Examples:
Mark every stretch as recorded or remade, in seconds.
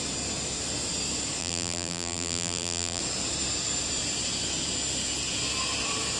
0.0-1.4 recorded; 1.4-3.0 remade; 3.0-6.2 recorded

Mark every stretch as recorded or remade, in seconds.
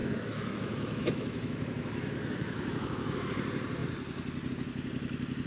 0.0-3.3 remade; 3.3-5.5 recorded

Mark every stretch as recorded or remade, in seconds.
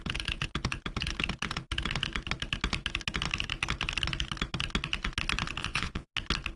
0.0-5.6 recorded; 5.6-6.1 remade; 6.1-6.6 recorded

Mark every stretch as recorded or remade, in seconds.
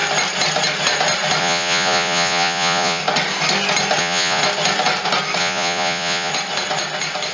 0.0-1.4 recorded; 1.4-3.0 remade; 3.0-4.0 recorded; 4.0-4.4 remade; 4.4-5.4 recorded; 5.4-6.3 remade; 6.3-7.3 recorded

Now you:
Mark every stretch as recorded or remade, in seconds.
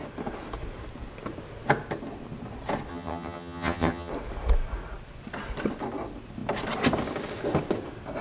0.0-2.9 recorded; 2.9-4.1 remade; 4.1-8.2 recorded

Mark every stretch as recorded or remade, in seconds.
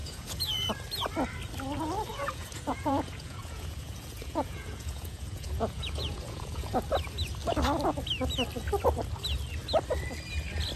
0.0-0.7 remade; 0.7-2.1 recorded; 2.1-6.7 remade; 6.7-10.8 recorded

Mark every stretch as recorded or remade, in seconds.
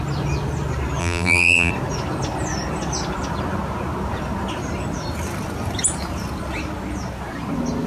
0.0-1.0 recorded; 1.0-1.7 remade; 1.7-7.9 recorded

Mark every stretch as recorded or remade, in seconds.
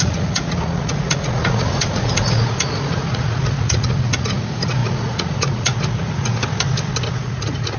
0.0-6.4 remade; 6.4-7.1 recorded; 7.1-7.8 remade